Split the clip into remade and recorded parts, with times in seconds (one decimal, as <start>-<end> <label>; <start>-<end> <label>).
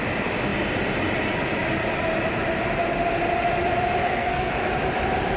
0.0-4.0 recorded; 4.0-4.5 remade; 4.5-5.4 recorded